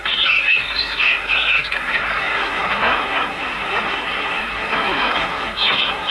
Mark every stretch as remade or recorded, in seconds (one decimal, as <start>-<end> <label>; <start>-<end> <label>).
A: 0.0-6.1 remade

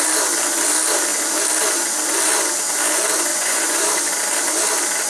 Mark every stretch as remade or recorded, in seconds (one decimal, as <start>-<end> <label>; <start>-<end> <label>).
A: 0.0-3.3 recorded; 3.3-3.9 remade; 3.9-5.1 recorded

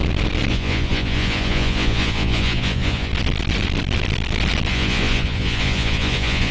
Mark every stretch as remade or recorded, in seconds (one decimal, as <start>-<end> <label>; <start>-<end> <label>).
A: 0.0-0.5 recorded; 0.5-3.1 remade; 3.1-4.7 recorded; 4.7-6.5 remade

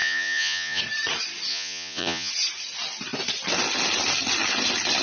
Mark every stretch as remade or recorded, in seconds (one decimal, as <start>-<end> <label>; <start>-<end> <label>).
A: 0.0-0.8 remade; 0.8-1.5 recorded; 1.5-2.3 remade; 2.3-5.0 recorded

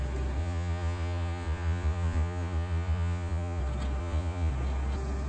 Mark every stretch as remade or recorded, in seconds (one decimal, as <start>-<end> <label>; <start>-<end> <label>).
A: 0.0-0.4 recorded; 0.4-3.6 remade; 3.6-4.0 recorded; 4.0-4.5 remade; 4.5-5.3 recorded

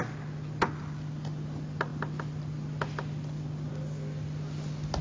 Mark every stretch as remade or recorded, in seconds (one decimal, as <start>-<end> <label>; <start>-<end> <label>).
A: 0.0-5.0 recorded

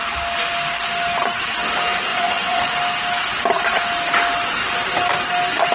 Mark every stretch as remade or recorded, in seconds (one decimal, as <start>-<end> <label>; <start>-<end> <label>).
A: 0.0-2.1 recorded; 2.1-2.7 remade; 2.7-5.7 recorded

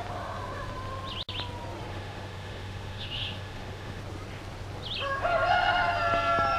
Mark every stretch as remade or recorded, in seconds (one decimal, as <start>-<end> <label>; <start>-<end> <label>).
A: 0.0-1.9 recorded; 1.9-4.0 remade; 4.0-6.6 recorded